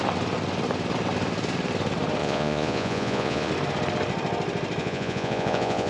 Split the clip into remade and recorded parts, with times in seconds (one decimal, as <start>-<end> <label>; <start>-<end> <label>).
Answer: 0.0-2.2 recorded; 2.2-3.5 remade; 3.5-4.8 recorded; 4.8-5.9 remade